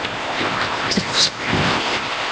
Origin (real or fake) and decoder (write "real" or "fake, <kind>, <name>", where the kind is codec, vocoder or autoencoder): fake, codec, ZipCodec